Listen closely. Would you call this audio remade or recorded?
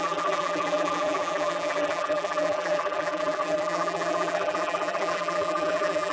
remade